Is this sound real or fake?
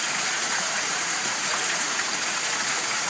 fake